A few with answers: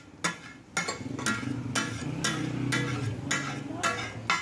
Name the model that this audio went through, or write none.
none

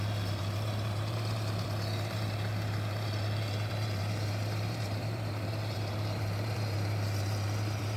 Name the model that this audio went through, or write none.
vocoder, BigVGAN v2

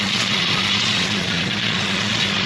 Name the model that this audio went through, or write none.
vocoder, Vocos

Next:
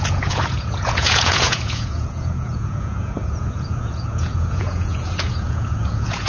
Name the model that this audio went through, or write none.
vocoder, Vocos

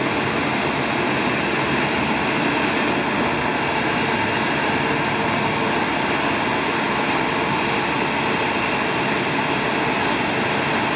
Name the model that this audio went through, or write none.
none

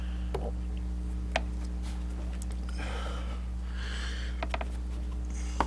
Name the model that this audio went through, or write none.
none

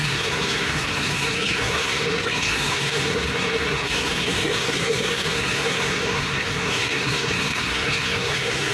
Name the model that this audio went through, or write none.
codec, SNAC